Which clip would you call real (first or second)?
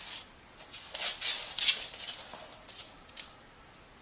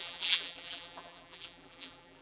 first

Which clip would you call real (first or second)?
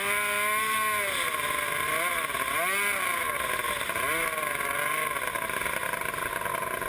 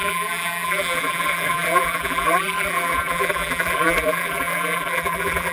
first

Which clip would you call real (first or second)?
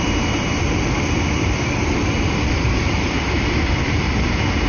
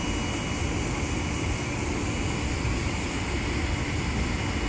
second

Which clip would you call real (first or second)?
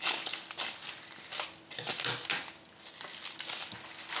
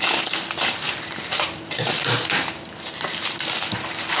first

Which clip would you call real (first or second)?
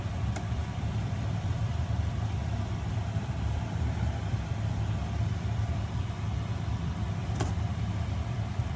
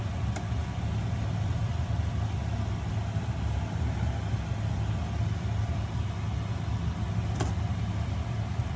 second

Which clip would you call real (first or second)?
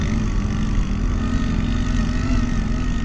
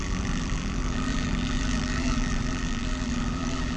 first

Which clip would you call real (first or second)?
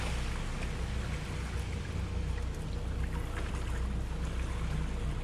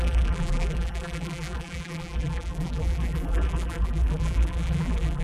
first